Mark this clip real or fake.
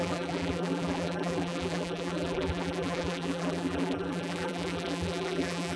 fake